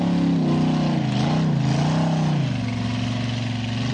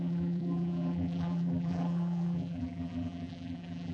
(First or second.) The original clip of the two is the first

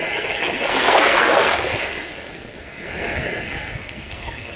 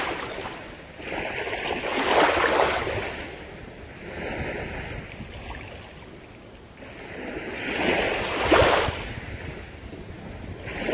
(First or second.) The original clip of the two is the second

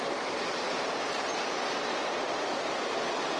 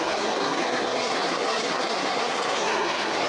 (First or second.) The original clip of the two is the first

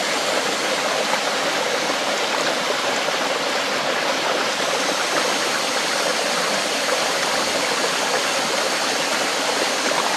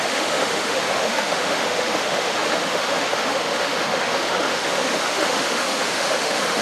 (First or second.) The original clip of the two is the first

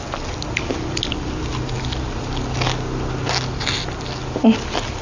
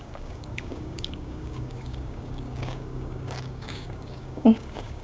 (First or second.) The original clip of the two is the first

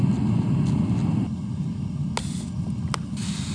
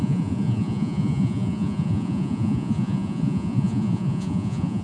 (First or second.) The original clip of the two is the first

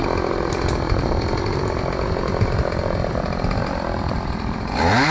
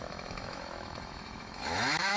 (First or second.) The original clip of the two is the first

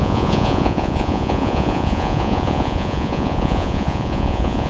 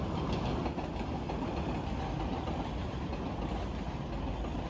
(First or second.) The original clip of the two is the second